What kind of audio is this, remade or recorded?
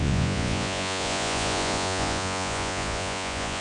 remade